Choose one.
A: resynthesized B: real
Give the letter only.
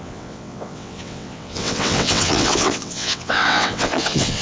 A